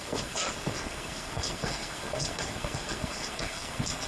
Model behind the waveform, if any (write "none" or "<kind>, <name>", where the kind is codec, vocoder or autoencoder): codec, SNAC